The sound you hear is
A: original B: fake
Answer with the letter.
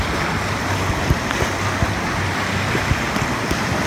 A